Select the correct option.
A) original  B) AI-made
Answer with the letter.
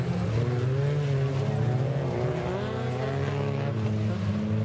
A